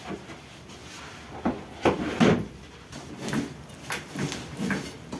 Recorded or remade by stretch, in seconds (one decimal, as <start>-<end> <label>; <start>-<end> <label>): 0.0-5.2 recorded